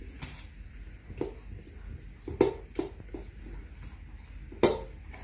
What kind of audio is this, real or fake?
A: real